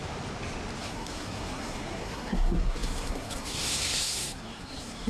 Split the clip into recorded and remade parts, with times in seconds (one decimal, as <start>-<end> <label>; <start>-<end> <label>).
0.0-0.8 recorded; 0.8-5.1 remade